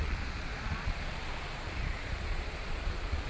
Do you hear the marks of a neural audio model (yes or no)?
yes